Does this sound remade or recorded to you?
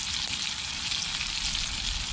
recorded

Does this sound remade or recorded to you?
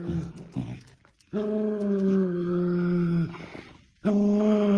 recorded